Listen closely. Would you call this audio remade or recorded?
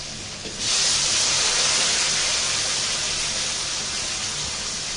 recorded